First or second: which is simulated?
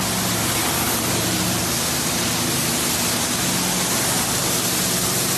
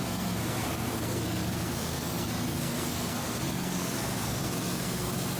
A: second